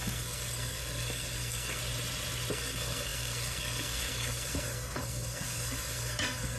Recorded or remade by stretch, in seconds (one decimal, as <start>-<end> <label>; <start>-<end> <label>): 0.0-1.8 remade; 1.8-2.5 recorded; 2.5-6.6 remade